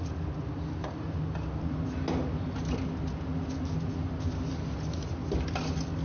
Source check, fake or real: real